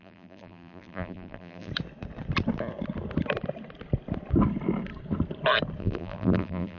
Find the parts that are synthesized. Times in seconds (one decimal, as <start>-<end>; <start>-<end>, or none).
0.0-1.7; 5.8-6.8